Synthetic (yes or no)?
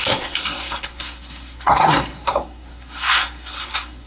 yes